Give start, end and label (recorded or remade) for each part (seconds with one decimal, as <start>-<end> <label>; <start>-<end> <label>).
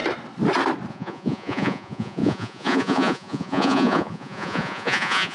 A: 0.0-0.9 recorded; 0.9-5.3 remade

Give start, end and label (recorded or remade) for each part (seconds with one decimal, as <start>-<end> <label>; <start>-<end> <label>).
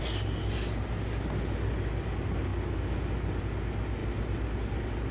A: 0.0-5.1 recorded